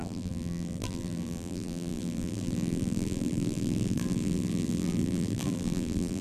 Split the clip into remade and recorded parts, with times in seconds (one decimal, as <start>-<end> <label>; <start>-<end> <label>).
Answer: 0.0-6.2 remade